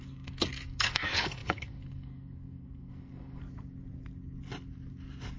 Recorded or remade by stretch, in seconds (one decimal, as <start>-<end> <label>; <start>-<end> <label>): 0.0-3.4 remade; 3.4-5.4 recorded